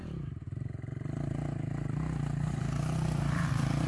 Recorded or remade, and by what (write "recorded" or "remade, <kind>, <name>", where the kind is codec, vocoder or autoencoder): remade, vocoder, BigVGAN v2